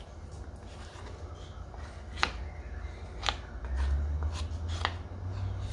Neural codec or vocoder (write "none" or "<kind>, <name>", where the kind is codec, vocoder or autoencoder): none